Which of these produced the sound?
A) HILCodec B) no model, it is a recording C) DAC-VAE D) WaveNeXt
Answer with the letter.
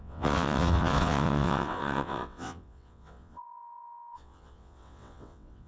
D